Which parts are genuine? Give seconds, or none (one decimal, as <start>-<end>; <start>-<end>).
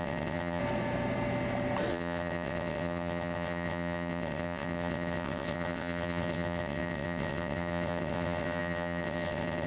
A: 0.6-1.9